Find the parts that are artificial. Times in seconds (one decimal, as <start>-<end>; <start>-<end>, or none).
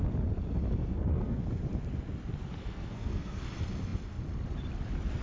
0.8-1.4; 2.6-3.4